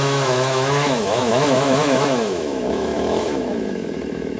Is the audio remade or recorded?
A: remade